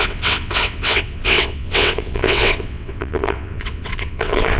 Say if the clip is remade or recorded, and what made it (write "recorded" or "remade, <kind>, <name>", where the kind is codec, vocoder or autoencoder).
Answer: remade, vocoder, WaveNeXt